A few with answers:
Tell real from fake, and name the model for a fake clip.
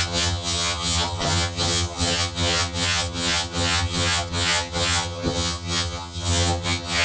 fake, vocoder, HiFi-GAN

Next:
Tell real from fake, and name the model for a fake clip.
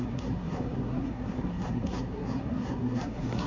fake, codec, SNAC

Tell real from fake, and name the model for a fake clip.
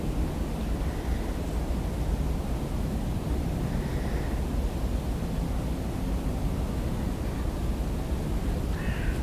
real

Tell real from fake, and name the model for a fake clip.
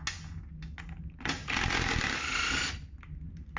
real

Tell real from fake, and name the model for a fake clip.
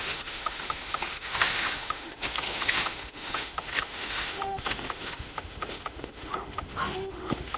fake, autoencoder, DAC-VAE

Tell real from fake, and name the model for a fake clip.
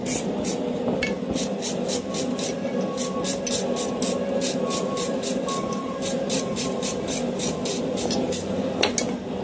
real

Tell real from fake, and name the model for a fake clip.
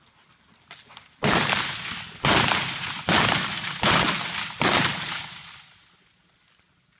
real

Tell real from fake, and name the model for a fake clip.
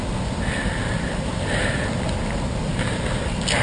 real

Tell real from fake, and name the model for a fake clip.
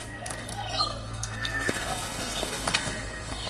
fake, codec, SNAC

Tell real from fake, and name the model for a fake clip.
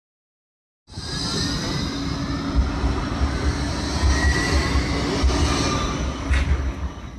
real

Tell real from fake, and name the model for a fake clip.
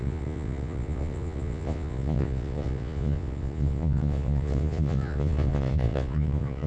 fake, vocoder, Vocos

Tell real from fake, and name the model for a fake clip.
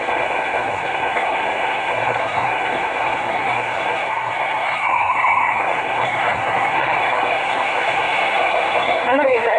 fake, codec, SNAC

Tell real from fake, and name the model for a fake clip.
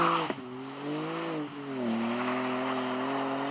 real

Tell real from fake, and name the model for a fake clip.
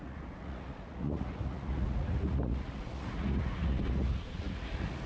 fake, vocoder, Vocos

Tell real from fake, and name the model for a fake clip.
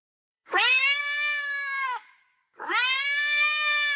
fake, codec, DAC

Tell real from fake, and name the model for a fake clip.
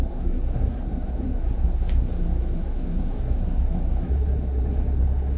fake, codec, SNAC